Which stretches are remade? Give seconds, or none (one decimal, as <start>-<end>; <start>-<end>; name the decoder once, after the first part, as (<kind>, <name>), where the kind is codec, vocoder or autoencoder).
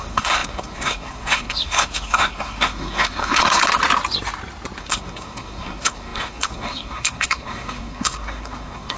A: 0.0-3.6 (codec, SNAC); 4.8-9.0